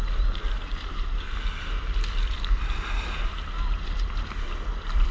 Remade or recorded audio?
recorded